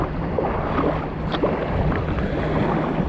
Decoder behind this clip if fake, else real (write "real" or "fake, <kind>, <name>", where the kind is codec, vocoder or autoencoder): real